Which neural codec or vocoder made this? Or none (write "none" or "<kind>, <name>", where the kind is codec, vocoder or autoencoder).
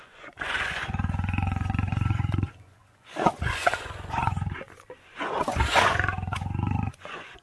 vocoder, Vocos